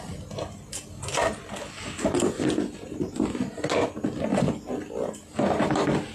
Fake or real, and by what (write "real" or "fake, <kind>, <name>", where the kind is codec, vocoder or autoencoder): real